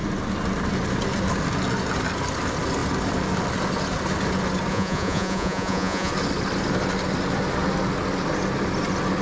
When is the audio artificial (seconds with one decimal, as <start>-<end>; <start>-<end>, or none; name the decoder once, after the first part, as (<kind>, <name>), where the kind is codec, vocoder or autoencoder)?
4.7-6.1 (vocoder, Vocos)